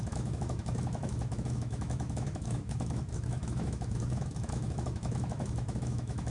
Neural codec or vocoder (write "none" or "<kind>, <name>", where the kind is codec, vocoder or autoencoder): autoencoder, DAC-VAE